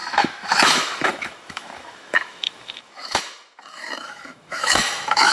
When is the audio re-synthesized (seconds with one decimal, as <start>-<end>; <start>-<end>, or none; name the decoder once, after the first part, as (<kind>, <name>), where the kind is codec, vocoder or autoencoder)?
0.0-5.3 (autoencoder, DAC-VAE)